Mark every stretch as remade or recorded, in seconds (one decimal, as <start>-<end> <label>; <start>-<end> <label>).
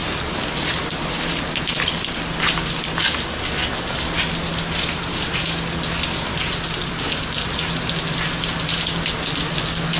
0.0-10.0 recorded